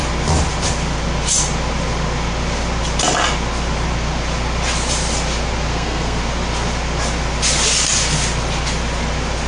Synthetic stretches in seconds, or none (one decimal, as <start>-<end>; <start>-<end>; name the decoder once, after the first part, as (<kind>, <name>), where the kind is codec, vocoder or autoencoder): 5.7-6.2 (codec, SNAC)